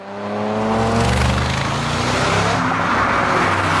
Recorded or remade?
recorded